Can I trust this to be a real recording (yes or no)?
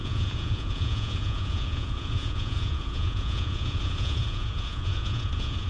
no